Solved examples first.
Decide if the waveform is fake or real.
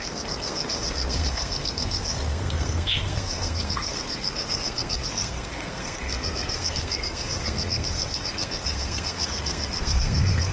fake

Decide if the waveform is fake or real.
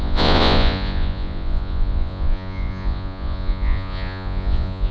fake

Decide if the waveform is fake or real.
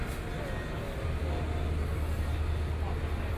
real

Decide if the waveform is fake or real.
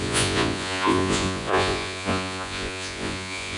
fake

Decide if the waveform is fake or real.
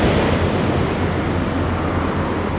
real